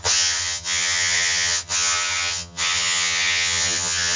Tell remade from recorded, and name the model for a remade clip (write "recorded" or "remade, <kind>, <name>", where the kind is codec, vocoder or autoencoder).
remade, vocoder, HiFi-GAN